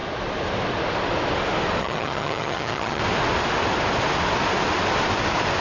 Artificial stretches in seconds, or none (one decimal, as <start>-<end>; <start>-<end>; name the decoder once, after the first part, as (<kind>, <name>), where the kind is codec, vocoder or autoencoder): 1.8-3.0 (vocoder, HiFi-GAN)